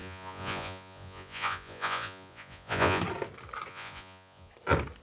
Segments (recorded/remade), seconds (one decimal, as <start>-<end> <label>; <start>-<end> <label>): 0.0-3.0 remade; 3.0-3.7 recorded; 3.7-4.5 remade; 4.5-5.0 recorded

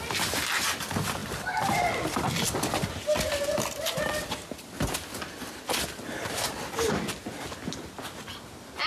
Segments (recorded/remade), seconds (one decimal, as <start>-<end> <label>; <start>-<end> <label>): 0.0-1.2 recorded; 1.2-4.2 remade; 4.2-8.9 recorded